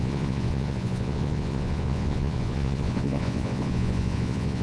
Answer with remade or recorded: remade